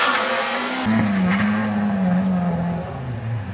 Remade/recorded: recorded